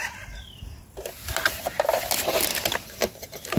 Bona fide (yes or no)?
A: yes